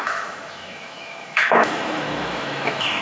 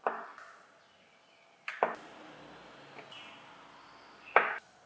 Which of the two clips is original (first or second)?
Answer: second